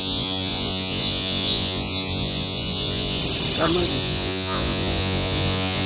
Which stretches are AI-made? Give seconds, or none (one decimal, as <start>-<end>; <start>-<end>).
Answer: 0.0-3.2; 3.9-5.9